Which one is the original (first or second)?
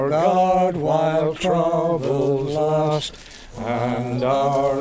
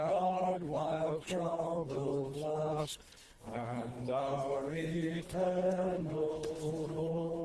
first